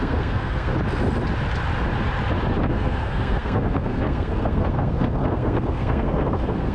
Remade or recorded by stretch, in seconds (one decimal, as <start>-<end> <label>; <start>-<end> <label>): 0.0-0.7 remade; 0.7-2.7 recorded; 2.7-6.7 remade